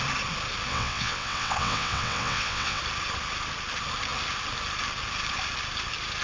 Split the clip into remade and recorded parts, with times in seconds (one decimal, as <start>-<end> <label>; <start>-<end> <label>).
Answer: 0.0-0.7 recorded; 0.7-2.8 remade; 2.8-6.2 recorded